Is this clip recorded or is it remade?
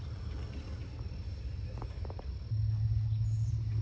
recorded